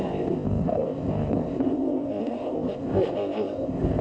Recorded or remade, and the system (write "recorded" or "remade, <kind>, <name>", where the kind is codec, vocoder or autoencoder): remade, codec, ZipCodec